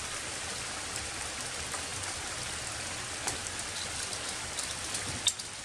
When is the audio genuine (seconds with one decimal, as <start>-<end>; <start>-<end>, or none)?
0.0-5.6